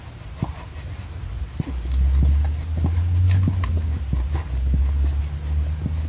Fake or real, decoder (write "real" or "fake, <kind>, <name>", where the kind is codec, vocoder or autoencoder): real